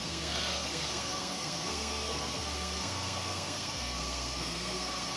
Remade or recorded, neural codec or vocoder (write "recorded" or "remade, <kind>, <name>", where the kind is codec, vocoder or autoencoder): remade, codec, SNAC